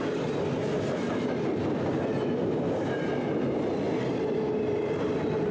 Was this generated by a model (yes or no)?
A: no